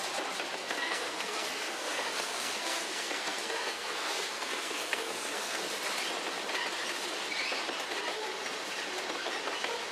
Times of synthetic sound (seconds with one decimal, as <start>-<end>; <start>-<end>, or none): 0.6-5.7